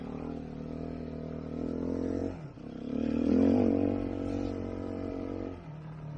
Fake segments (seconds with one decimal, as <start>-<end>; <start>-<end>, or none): none